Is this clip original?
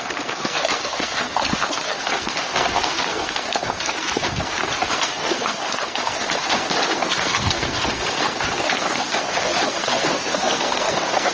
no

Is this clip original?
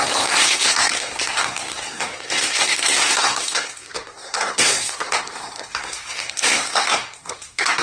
no